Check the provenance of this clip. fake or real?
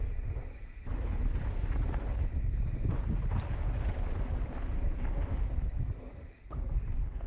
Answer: real